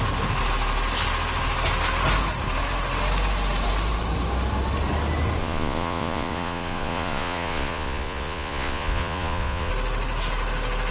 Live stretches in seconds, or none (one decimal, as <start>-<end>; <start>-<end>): 0.0-5.4; 9.7-10.9